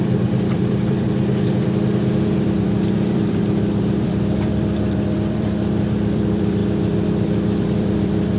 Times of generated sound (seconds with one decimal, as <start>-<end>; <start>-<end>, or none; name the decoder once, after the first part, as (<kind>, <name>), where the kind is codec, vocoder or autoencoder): 0.0-8.4 (vocoder, BigVGAN v2)